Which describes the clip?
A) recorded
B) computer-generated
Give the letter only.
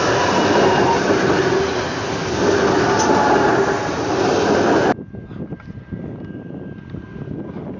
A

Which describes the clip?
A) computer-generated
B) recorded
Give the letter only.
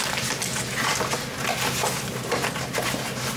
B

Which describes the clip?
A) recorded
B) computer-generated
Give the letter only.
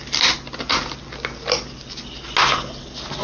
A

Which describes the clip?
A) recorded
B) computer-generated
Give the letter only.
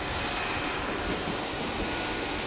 A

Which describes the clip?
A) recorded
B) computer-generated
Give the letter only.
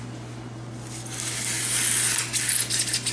A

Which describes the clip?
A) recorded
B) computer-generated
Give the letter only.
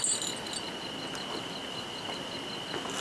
A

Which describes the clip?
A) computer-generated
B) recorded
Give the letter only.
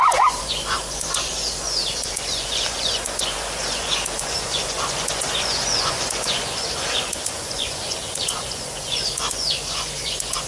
A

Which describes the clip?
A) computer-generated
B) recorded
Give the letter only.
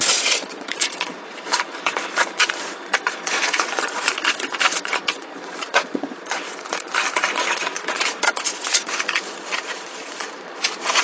A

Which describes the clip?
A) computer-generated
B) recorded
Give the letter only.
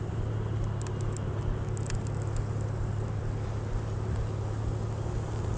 B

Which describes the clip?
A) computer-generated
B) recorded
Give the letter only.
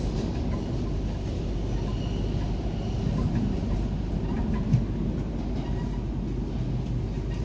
B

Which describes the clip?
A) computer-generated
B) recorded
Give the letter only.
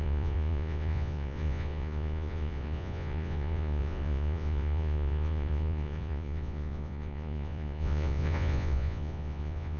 A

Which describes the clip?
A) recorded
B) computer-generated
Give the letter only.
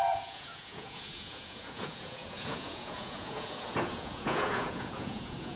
B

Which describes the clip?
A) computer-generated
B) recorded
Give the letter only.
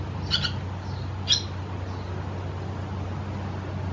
B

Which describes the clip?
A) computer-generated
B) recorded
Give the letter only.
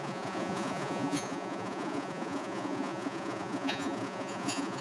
A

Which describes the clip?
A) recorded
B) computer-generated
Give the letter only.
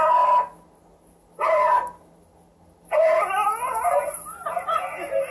A